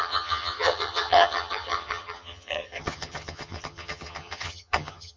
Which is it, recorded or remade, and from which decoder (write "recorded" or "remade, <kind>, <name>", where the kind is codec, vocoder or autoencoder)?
remade, vocoder, HiFi-GAN